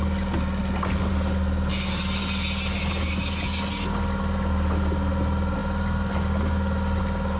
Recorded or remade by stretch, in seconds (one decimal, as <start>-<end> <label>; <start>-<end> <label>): 0.0-7.4 recorded